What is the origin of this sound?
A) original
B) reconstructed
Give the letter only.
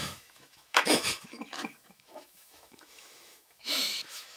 B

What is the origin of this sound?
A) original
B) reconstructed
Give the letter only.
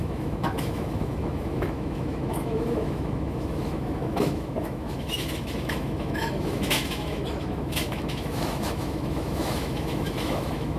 B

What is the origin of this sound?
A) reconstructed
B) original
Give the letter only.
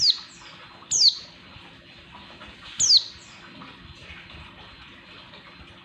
B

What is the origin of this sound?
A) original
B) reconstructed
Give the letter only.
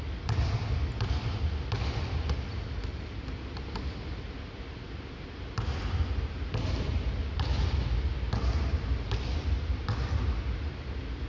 A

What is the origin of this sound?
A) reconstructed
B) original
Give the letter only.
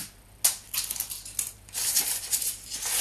B